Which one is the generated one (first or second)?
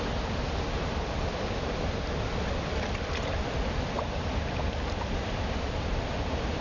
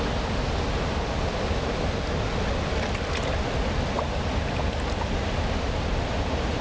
first